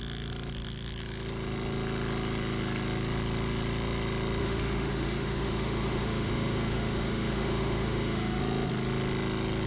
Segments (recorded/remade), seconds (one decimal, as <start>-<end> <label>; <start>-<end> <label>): 0.0-4.4 recorded; 4.4-8.4 remade; 8.4-9.7 recorded